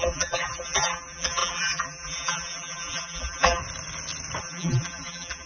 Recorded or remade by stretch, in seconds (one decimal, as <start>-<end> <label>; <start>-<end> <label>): 0.0-3.6 remade; 3.6-4.4 recorded; 4.4-5.5 remade